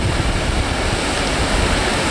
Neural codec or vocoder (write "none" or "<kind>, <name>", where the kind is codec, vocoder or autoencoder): none